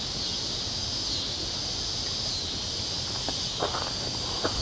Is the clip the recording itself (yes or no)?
yes